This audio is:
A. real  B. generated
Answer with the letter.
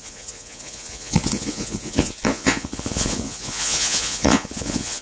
B